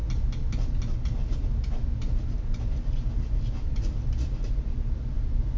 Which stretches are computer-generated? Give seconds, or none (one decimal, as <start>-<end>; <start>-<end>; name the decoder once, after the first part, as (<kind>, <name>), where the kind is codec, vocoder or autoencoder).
none